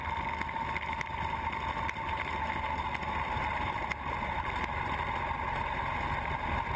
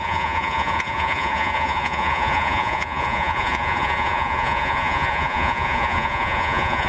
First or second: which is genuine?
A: first